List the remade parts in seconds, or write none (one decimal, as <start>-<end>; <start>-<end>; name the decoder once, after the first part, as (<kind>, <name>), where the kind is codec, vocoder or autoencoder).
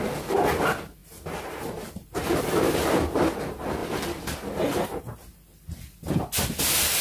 none